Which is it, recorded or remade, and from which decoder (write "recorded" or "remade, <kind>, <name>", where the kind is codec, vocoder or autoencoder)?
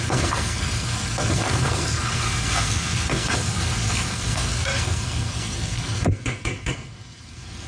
remade, codec, SNAC